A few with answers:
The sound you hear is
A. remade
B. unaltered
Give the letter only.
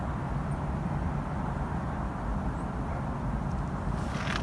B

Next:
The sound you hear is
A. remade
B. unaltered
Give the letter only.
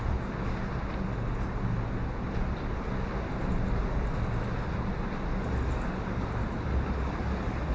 B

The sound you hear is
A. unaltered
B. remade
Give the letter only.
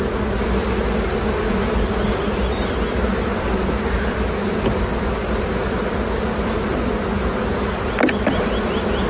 A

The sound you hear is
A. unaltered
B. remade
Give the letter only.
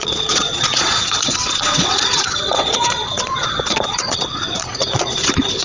B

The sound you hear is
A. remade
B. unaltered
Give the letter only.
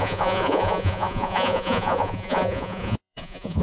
A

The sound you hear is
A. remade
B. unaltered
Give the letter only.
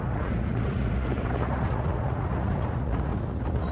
A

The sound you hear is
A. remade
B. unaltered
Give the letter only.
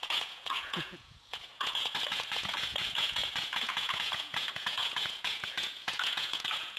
A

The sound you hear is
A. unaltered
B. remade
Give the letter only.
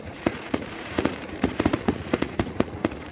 B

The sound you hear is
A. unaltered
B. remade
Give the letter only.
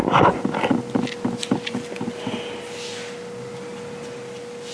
A